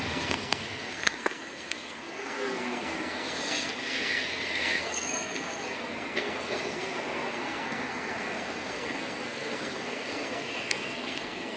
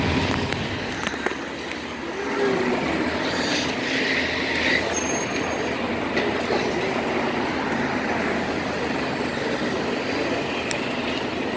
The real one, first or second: second